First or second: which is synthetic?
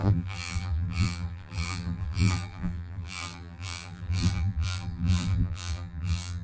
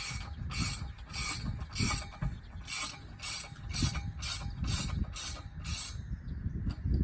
first